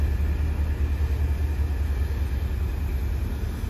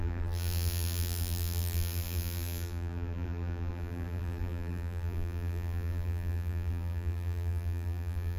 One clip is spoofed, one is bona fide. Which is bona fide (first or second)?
first